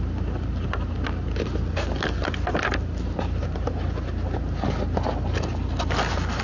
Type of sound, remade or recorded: recorded